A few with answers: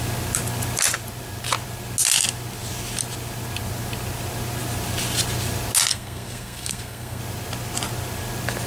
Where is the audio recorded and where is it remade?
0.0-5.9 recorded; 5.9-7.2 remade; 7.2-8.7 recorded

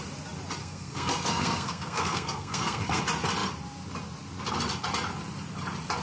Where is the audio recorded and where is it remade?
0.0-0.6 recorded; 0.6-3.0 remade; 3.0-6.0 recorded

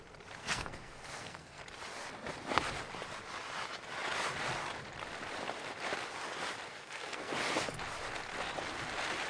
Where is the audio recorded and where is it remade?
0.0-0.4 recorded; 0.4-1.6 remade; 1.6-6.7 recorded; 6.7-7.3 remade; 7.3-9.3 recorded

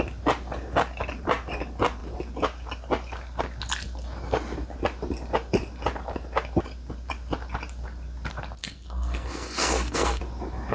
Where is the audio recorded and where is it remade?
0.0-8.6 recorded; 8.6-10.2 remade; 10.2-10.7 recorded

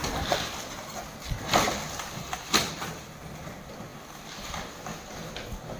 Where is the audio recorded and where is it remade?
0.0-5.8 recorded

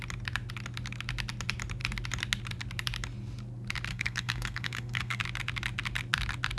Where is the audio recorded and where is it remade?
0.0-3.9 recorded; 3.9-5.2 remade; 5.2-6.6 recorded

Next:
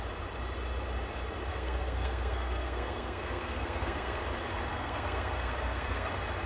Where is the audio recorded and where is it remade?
0.0-1.5 recorded; 1.5-4.2 remade; 4.2-4.7 recorded; 4.7-6.1 remade; 6.1-6.5 recorded

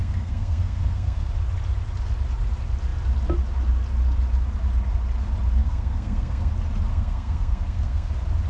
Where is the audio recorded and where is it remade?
0.0-1.3 remade; 1.3-5.6 recorded; 5.6-6.5 remade; 6.5-6.9 recorded; 6.9-8.1 remade; 8.1-8.5 recorded